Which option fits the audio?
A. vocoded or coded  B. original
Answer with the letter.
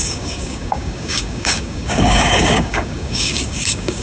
A